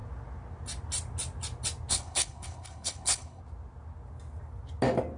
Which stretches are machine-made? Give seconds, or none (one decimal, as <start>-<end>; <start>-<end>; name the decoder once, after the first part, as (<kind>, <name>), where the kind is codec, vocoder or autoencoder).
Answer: 1.9-3.4 (codec, HILCodec)